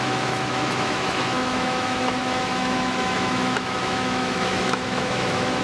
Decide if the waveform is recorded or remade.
remade